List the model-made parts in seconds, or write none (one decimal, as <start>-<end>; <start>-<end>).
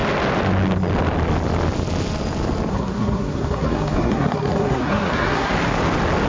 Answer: 2.7-5.5